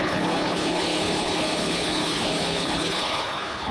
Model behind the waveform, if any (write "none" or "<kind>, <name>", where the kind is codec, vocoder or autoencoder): codec, HILCodec